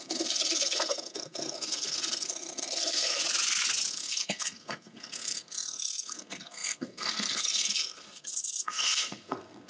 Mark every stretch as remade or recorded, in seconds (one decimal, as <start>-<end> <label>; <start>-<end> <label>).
0.0-3.2 remade; 3.2-3.9 recorded; 3.9-9.7 remade